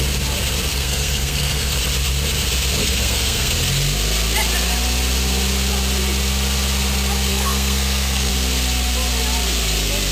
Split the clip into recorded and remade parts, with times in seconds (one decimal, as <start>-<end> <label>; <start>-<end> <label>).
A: 0.0-0.7 recorded; 0.7-1.8 remade; 1.8-2.8 recorded; 2.8-3.6 remade; 3.6-7.3 recorded; 7.3-8.3 remade; 8.3-10.1 recorded